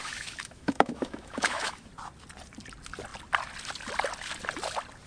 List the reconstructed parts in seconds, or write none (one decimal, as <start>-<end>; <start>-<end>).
0.0-1.9